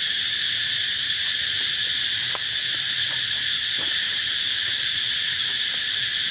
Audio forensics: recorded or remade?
remade